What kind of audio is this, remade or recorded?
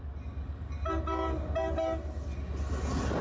recorded